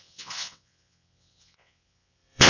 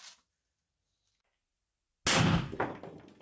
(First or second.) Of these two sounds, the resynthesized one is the first